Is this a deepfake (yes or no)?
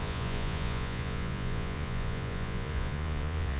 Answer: yes